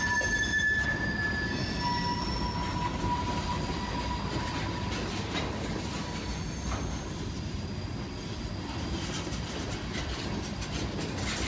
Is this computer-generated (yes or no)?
no